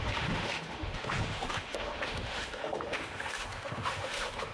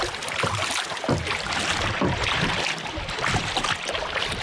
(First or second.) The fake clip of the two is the first